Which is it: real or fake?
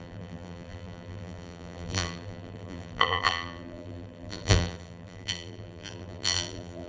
fake